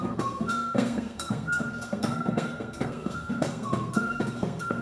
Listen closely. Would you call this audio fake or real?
fake